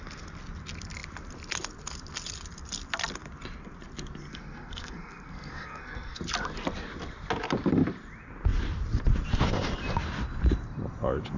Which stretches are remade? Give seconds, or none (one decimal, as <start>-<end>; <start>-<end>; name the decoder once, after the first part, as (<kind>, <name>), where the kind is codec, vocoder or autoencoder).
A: 4.3-6.2 (codec, SNAC)